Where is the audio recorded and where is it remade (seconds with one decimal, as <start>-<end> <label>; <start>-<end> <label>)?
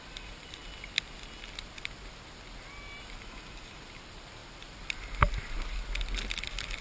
0.0-0.6 remade; 0.6-3.0 recorded; 3.0-4.4 remade; 4.4-6.8 recorded